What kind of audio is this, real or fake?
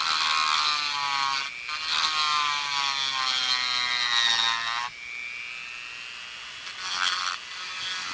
real